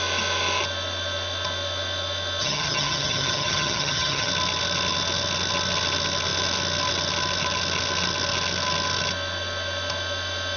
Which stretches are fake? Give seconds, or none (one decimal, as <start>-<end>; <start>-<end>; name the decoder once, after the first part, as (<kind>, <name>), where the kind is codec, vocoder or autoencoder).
2.4-4.3 (vocoder, HiFi-GAN)